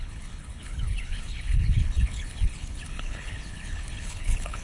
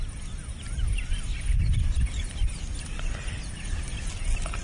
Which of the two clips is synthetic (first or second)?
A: first